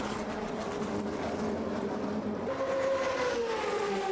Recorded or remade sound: recorded